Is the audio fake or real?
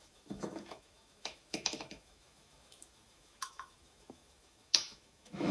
fake